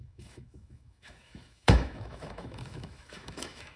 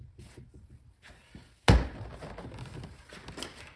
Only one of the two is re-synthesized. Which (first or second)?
first